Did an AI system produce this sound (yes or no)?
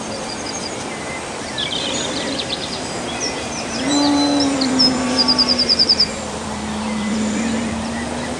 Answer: yes